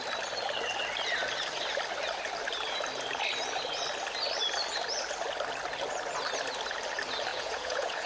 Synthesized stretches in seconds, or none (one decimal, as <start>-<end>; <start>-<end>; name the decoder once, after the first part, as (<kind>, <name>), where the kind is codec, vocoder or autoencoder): 7.3-8.1 (vocoder, Vocos)